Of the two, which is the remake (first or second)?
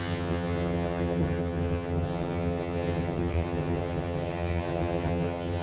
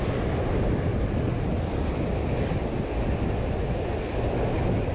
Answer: first